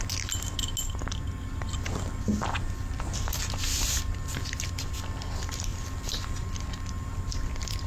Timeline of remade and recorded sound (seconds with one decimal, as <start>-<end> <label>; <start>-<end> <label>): 0.0-5.7 recorded; 5.7-7.9 remade